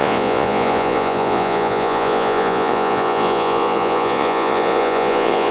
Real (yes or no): no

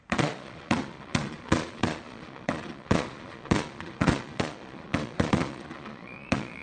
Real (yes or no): no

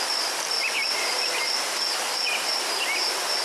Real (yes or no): yes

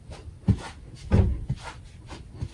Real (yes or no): yes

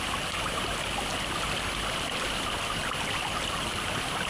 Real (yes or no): yes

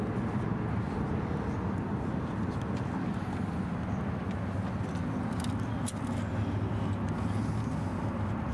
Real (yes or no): yes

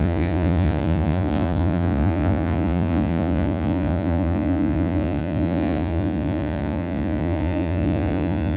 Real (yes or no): no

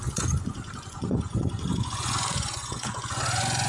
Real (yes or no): no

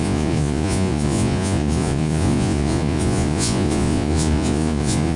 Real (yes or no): no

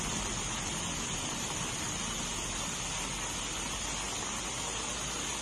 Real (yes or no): yes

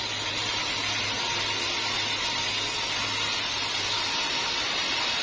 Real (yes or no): yes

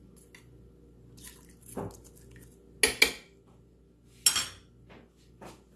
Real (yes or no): yes